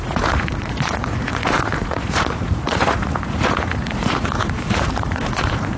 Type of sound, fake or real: fake